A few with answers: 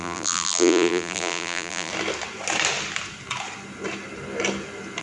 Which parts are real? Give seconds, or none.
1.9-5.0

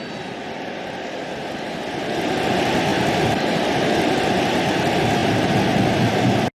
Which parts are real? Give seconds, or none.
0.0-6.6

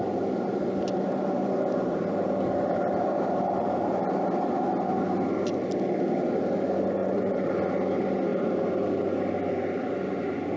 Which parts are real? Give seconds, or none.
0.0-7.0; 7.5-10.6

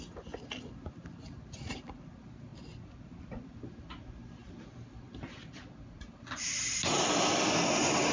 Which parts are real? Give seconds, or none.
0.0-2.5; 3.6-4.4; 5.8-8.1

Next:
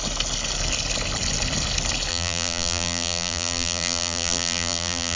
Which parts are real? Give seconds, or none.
0.0-2.1

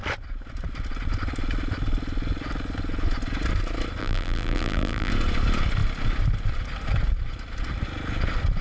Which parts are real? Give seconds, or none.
0.0-4.0; 5.1-8.6

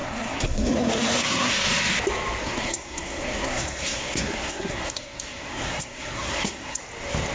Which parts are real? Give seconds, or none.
1.5-2.4; 6.8-7.3